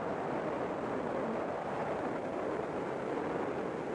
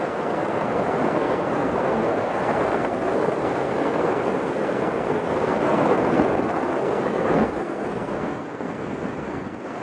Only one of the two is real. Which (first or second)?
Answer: first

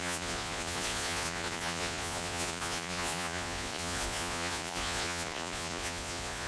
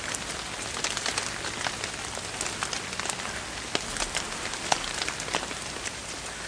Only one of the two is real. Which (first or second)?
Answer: second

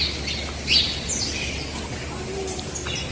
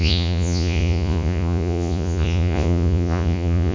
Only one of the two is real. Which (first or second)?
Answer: first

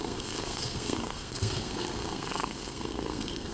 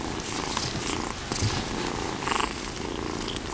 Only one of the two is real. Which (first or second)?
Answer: second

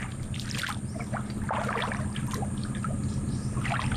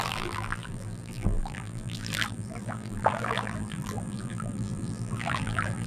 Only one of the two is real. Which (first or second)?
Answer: first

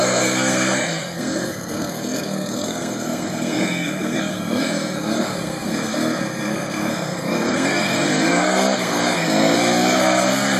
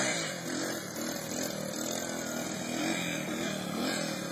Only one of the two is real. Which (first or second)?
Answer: second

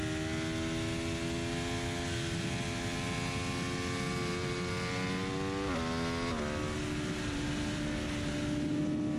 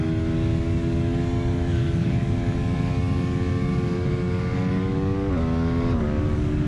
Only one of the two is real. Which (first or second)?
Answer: first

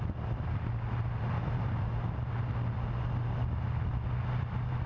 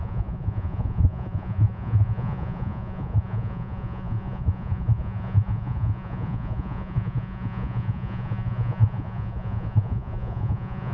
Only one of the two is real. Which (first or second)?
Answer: first